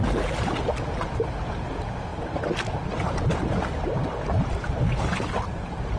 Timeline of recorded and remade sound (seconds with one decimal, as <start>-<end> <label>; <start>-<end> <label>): 0.0-6.0 recorded